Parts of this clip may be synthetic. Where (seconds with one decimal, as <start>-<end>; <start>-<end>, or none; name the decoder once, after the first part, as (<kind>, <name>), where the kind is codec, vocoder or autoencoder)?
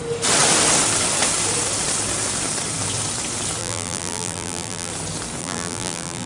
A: 3.6-4.9 (vocoder, BigVGAN v2); 5.4-6.3